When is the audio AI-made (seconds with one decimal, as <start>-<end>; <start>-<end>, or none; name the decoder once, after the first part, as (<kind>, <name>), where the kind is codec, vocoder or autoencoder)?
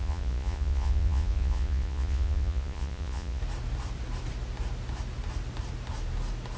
0.0-3.4 (vocoder, Vocos)